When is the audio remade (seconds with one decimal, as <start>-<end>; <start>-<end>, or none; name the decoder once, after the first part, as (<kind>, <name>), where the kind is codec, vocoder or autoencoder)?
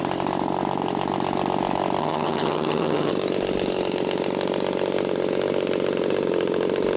2.0-3.1 (vocoder, HiFi-GAN)